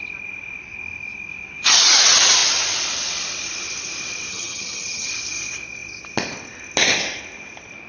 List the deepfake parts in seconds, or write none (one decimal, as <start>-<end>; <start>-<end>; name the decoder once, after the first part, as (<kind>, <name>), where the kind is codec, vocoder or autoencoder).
4.3-5.1 (vocoder, HiFi-GAN)